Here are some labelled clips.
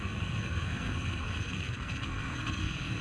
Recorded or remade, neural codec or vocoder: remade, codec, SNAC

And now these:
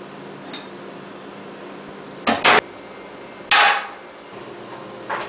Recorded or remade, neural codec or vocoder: recorded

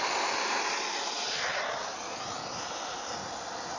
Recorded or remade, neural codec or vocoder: recorded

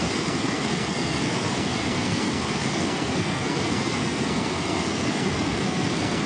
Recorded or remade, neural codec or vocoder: remade, codec, SNAC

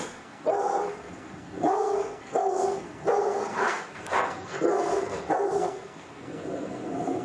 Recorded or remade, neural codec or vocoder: remade, codec, SNAC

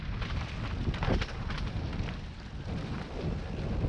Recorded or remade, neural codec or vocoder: recorded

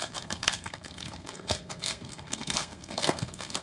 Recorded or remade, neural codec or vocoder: remade, codec, SNAC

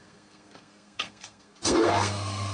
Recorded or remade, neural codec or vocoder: remade, codec, SNAC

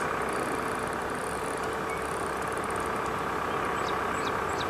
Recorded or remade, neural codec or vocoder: recorded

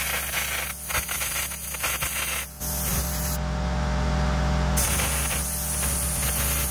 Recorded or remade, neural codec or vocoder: recorded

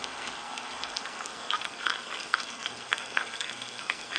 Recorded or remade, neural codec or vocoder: remade, codec, SNAC